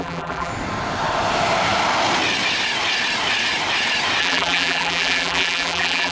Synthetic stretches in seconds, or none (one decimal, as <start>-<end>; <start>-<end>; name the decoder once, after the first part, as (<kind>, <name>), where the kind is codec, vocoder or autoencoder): 0.0-0.5 (vocoder, BigVGAN v2); 4.2-6.1